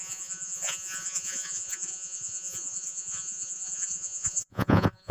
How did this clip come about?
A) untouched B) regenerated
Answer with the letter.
B